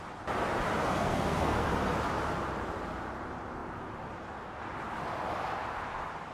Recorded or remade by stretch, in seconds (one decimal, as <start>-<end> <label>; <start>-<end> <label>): 0.0-0.8 recorded; 0.8-1.7 remade; 1.7-6.3 recorded